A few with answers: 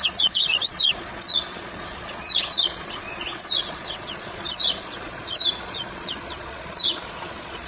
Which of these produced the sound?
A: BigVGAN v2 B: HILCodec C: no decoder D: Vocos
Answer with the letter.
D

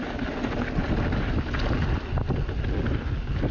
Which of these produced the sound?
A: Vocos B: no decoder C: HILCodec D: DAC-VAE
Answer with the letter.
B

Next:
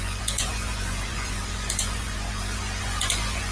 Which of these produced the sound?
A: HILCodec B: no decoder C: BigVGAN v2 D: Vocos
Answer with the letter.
D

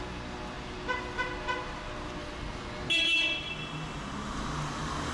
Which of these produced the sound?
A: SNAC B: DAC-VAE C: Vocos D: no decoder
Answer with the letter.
D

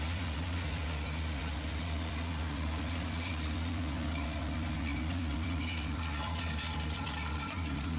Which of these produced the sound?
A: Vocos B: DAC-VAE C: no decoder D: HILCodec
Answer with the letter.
A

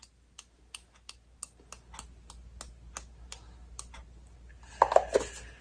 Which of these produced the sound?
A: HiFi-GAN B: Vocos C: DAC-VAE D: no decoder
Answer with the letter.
D